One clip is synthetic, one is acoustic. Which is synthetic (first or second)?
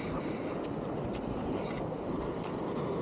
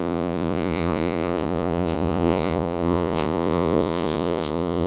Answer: second